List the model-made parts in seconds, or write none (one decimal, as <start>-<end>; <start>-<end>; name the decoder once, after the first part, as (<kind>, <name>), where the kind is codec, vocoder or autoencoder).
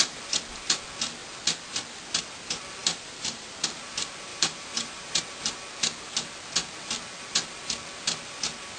2.8-3.5 (vocoder, BigVGAN v2); 4.3-5.2